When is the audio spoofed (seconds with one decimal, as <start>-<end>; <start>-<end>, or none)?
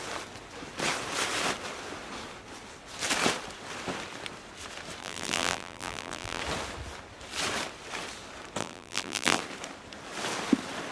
5.0-6.4; 8.6-9.4